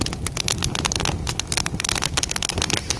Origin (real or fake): real